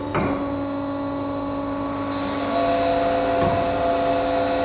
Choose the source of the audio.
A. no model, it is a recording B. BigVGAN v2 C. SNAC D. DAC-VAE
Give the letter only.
A